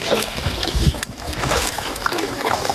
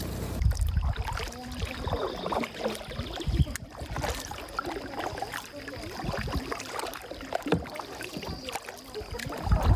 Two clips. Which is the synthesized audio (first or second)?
first